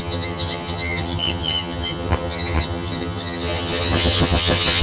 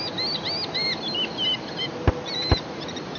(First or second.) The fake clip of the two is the first